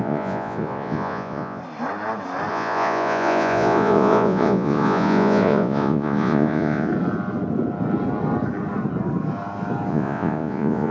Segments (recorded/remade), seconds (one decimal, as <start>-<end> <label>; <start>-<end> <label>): 0.0-1.6 remade; 1.6-2.5 recorded; 2.5-6.9 remade; 6.9-9.9 recorded; 9.9-10.9 remade